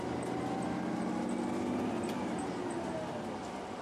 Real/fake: real